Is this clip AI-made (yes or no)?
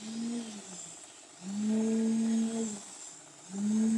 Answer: no